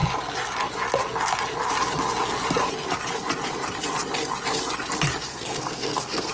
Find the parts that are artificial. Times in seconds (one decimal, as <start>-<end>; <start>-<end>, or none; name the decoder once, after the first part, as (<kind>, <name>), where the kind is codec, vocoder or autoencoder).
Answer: 5.3-6.3 (codec, SNAC)